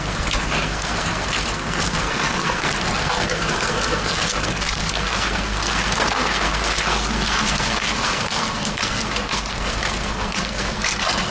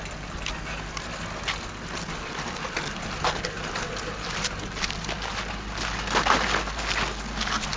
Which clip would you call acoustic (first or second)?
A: second